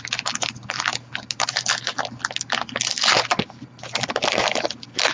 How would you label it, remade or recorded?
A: recorded